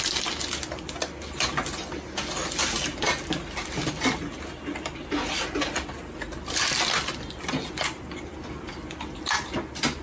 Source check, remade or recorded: recorded